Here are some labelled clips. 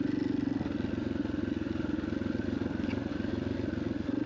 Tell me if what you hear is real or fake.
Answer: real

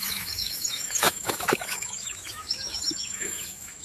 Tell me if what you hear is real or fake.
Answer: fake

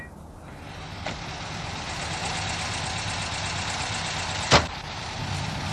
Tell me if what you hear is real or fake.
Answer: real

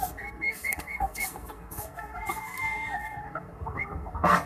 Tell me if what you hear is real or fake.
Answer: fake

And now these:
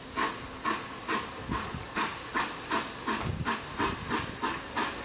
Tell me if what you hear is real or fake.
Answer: real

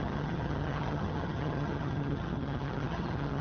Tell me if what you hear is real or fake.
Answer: fake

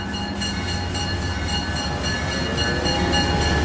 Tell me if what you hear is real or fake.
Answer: real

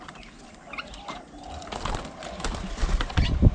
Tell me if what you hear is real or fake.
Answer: real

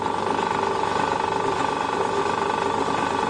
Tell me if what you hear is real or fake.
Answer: real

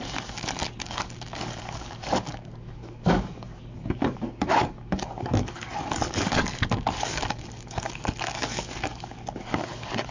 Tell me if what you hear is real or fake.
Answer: fake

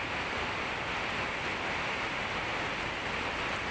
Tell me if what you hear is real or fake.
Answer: real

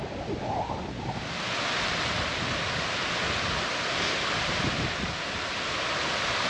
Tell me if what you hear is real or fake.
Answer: real